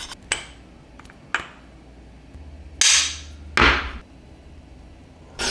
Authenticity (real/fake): real